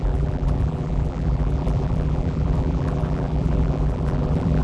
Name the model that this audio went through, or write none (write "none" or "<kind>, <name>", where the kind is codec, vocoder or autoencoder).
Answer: vocoder, BigVGAN v2